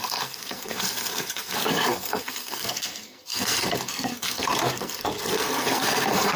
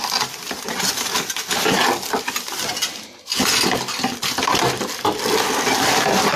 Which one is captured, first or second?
second